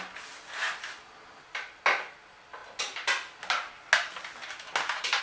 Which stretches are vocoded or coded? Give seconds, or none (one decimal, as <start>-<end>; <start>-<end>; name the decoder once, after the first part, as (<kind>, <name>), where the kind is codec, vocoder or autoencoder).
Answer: none